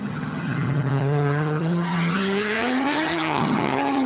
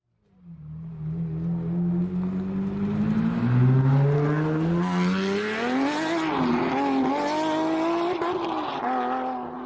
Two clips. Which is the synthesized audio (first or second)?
first